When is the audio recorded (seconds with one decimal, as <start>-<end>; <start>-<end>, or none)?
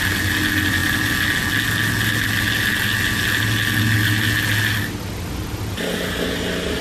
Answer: 0.0-6.8